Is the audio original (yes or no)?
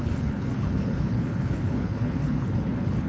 no